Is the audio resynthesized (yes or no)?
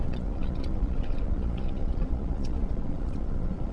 yes